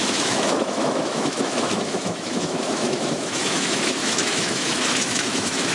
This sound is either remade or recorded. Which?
remade